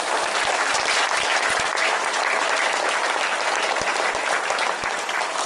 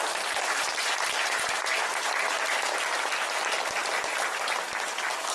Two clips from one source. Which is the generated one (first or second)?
first